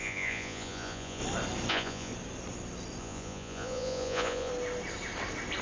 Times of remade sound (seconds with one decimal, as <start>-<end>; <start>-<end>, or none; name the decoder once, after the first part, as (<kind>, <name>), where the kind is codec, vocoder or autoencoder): 0.0-1.2 (vocoder, Vocos); 1.7-2.1; 3.0-4.5